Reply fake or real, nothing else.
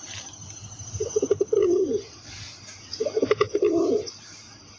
real